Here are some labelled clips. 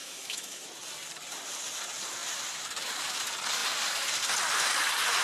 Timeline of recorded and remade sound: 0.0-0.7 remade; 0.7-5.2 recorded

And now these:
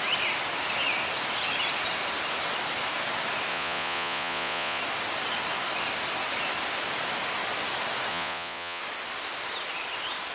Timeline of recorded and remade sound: 0.0-3.5 recorded; 3.5-4.8 remade; 4.8-8.1 recorded; 8.1-8.8 remade; 8.8-10.3 recorded

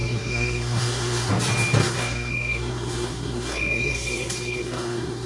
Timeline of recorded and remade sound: 0.0-1.3 remade; 1.3-1.8 recorded; 1.8-5.3 remade

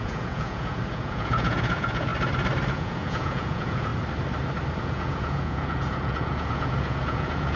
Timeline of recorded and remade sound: 0.0-2.1 remade; 2.1-2.7 recorded; 2.7-3.9 remade; 3.9-4.8 recorded; 4.8-7.6 remade

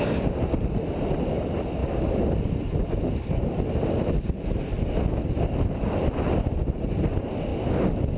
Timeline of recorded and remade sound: 0.0-8.2 recorded

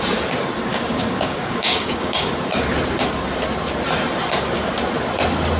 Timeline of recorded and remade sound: 0.0-0.7 recorded; 0.7-2.3 remade; 2.3-5.6 recorded